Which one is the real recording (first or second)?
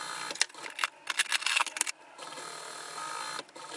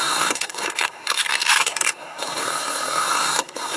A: first